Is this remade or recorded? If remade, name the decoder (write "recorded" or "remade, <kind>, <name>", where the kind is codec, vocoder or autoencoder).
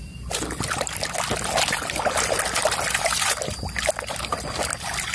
recorded